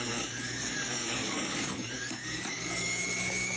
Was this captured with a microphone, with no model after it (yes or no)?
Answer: no